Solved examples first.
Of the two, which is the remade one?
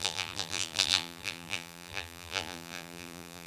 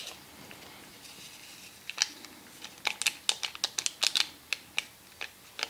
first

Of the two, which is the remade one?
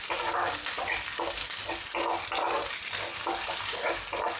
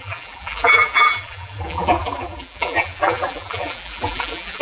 second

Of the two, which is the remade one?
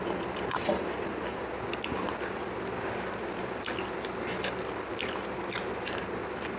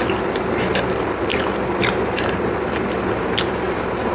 second